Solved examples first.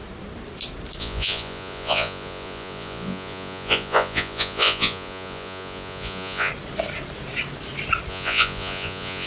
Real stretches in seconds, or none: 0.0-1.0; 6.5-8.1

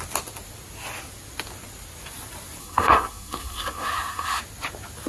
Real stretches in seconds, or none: 0.0-2.6; 4.4-5.1

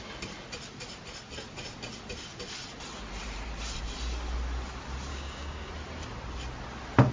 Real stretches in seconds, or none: 0.0-5.1; 5.7-7.1

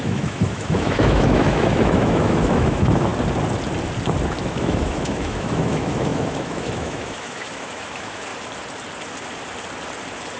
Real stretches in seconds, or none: 3.1-4.4; 8.3-10.4

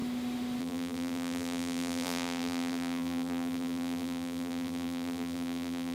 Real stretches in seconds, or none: 0.0-0.6

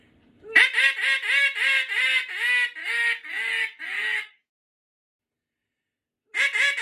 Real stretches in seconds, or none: 0.0-2.8; 5.2-6.8